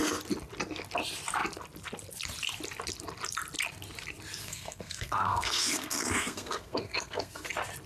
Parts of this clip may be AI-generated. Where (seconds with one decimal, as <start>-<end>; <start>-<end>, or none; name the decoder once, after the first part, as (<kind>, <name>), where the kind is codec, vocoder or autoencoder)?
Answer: 4.4-7.5 (codec, SNAC)